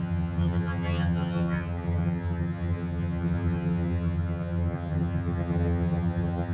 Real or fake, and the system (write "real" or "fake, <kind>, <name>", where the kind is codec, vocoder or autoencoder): fake, vocoder, HiFi-GAN